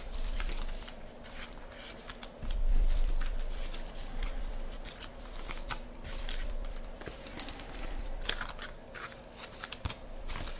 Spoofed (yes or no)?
yes